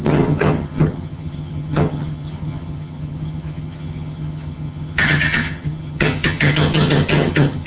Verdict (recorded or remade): remade